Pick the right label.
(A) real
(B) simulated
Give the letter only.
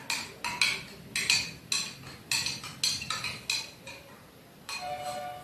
A